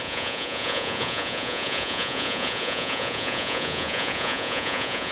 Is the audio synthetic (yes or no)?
yes